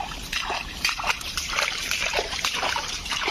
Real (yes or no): no